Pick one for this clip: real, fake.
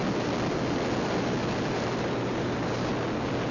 real